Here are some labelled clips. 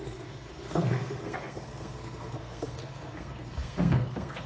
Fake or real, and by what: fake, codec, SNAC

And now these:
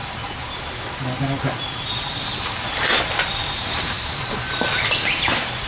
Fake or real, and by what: real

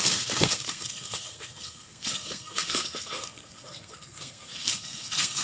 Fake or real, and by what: fake, codec, SNAC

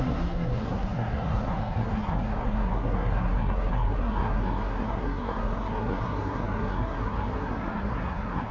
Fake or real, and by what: fake, codec, SNAC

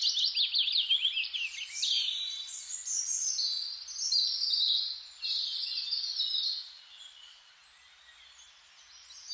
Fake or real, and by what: real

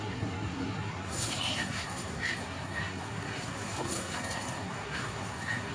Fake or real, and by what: fake, codec, SNAC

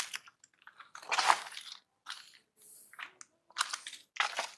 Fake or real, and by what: real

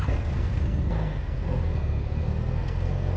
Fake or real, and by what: fake, codec, SNAC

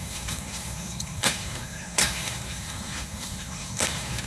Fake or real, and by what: fake, codec, SNAC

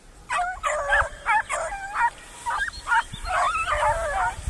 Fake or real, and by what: real